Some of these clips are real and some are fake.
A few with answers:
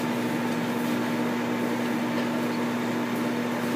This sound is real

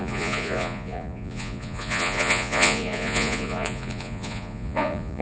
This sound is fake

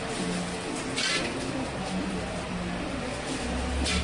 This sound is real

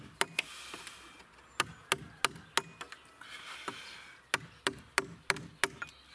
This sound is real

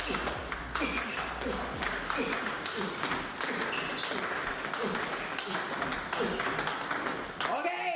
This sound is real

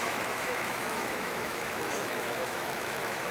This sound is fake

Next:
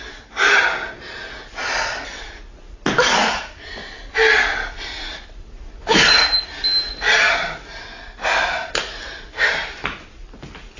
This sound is real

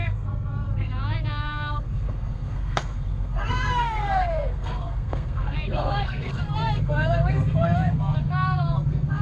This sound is fake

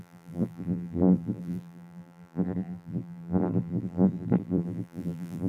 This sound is fake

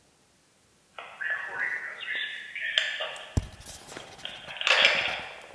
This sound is real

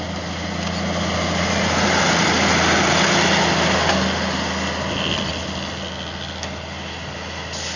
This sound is real